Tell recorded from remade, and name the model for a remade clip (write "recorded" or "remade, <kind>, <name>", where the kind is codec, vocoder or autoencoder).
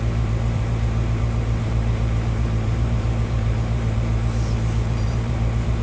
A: remade, vocoder, BigVGAN v2